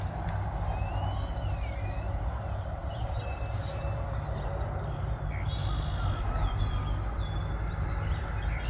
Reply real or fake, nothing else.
real